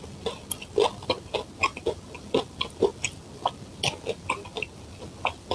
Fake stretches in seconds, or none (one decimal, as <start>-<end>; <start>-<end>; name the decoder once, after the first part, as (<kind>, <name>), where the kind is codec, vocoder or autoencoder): none